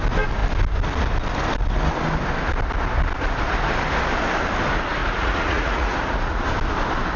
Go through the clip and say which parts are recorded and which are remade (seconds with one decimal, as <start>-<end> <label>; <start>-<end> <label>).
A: 0.0-5.0 recorded; 5.0-6.4 remade; 6.4-7.2 recorded